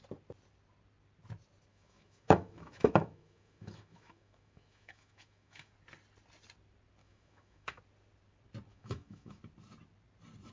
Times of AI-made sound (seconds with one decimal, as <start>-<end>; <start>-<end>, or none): 1.7-5.7; 7.0-7.8; 8.7-9.4